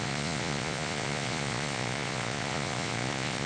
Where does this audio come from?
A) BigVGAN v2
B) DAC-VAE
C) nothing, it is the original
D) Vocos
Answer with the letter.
D